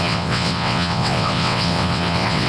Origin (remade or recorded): remade